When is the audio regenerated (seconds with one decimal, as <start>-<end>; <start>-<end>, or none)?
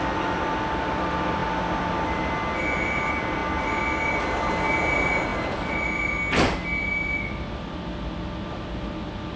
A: none